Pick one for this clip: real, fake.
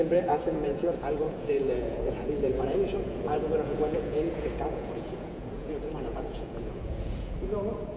fake